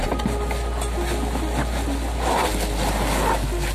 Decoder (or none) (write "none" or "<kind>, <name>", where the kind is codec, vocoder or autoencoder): none